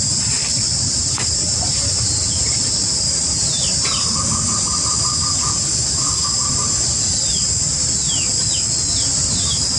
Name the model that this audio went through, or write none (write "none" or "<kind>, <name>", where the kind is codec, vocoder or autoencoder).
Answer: none